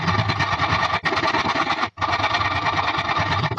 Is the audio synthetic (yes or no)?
no